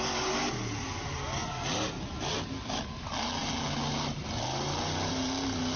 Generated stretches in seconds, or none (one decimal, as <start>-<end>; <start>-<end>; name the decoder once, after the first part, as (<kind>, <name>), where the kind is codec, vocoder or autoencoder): none